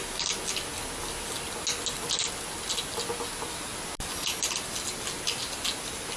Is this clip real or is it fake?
real